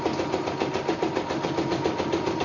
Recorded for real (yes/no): yes